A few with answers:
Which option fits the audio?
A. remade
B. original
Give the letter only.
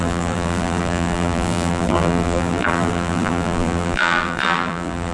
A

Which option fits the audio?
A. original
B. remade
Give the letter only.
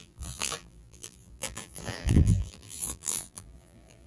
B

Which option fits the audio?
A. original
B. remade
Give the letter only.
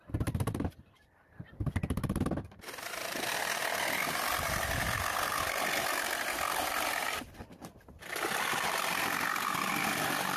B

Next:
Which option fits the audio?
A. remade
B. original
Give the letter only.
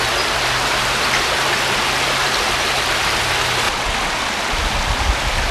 B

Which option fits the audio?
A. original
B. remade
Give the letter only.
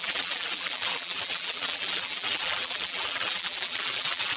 B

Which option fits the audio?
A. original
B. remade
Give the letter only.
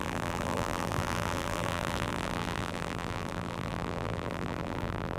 B